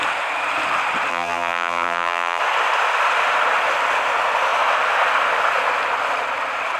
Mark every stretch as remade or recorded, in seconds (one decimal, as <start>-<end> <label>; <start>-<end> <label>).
0.0-1.1 recorded; 1.1-2.4 remade; 2.4-6.8 recorded